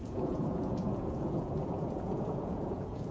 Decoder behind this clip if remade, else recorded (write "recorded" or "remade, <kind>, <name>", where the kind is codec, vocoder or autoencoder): remade, vocoder, Vocos